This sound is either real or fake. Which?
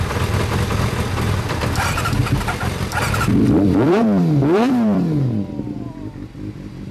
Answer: fake